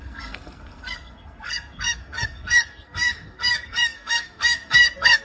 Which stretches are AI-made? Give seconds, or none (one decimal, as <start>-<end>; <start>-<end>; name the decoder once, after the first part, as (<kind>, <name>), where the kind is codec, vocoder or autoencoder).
0.0-5.2 (codec, SNAC)